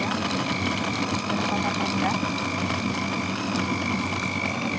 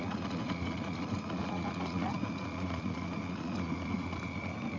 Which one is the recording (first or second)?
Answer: first